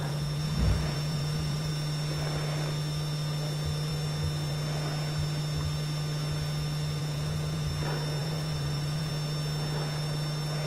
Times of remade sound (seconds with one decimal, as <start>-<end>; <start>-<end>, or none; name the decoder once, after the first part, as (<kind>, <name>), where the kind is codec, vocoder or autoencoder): 0.0-1.7 (vocoder, Vocos); 7.0-7.7; 8.2-9.1